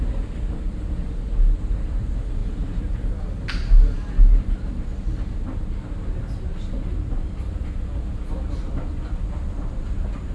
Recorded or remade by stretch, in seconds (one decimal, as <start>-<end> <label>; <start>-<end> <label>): 0.0-2.4 recorded; 2.4-3.1 remade; 3.1-10.3 recorded